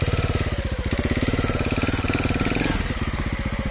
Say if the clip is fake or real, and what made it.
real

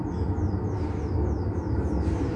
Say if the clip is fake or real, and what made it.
real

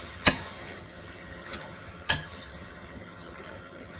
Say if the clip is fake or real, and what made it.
fake, vocoder, HiFi-GAN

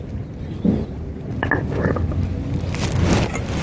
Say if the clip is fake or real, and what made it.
real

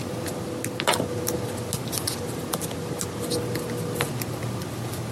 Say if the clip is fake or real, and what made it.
real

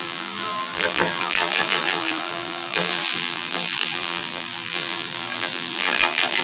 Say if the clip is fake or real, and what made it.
fake, vocoder, BigVGAN v2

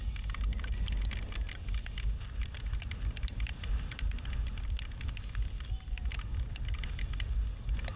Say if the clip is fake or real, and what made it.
real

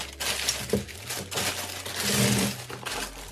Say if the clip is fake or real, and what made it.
real